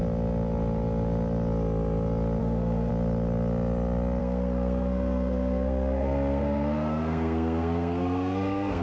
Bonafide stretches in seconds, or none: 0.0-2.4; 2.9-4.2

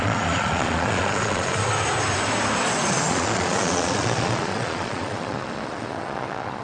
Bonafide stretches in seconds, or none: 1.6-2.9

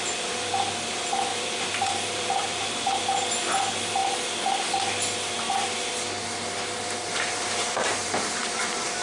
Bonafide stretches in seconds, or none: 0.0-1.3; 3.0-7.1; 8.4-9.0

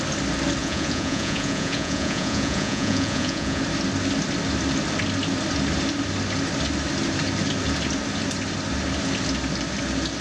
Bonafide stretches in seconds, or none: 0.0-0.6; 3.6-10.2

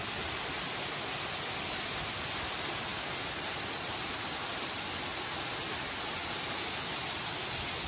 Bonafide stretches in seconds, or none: 0.0-7.9

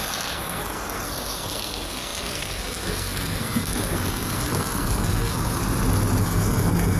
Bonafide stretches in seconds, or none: 5.6-6.2